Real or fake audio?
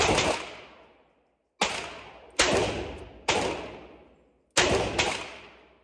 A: real